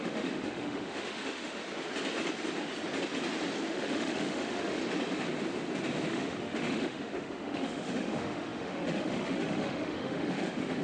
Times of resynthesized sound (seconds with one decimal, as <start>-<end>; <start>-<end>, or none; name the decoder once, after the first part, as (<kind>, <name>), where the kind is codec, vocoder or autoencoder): 0.0-1.6 (autoencoder, DAC-VAE); 3.7-4.8; 6.1-10.8